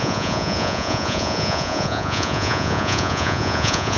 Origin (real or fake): fake